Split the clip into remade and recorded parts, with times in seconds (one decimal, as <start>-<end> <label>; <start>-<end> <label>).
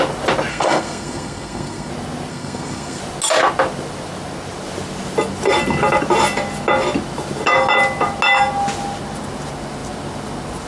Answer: 0.0-0.5 recorded; 0.5-1.9 remade; 1.9-2.3 recorded; 2.3-3.0 remade; 3.0-10.7 recorded